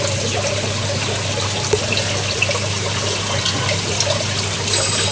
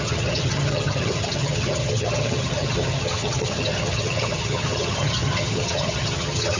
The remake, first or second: second